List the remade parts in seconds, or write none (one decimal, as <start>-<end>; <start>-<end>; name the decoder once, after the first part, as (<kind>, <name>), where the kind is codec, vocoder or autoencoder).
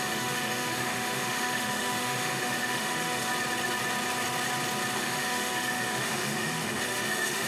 0.0-3.3 (autoencoder, DAC-VAE); 4.9-7.5